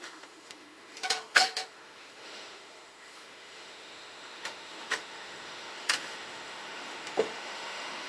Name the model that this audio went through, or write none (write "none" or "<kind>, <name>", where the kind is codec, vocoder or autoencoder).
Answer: autoencoder, DAC-VAE